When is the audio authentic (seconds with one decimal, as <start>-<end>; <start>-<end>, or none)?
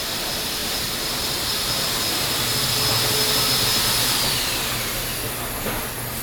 0.0-0.6; 2.7-6.2